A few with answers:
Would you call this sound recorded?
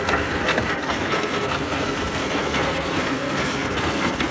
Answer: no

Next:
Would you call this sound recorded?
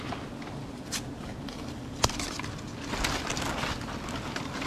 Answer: yes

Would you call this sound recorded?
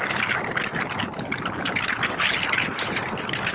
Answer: yes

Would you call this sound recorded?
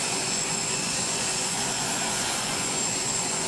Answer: no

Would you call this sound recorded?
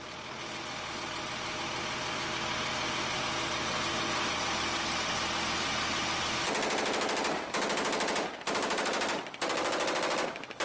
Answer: yes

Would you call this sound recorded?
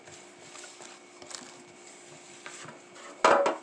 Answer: yes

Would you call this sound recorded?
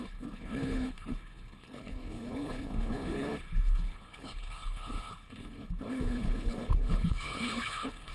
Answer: no